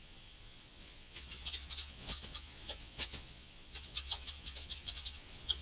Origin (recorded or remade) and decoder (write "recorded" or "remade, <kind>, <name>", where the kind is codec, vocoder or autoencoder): remade, vocoder, Vocos